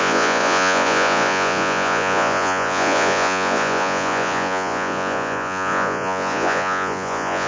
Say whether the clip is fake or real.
fake